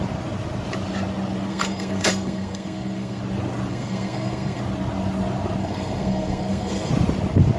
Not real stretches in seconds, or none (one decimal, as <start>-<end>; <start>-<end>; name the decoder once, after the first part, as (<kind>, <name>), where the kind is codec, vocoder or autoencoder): 1.5-3.2 (codec, SNAC); 3.7-4.6; 5.6-6.9